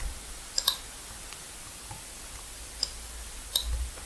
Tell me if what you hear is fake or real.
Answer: real